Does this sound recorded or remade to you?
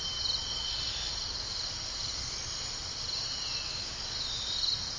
recorded